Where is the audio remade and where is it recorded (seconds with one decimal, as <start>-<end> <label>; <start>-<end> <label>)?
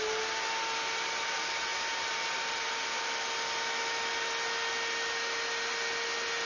0.0-6.5 recorded